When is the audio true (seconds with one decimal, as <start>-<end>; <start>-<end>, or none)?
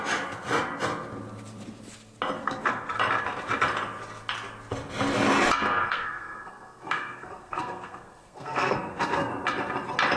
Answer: 0.0-2.4; 2.9-5.9; 9.3-10.2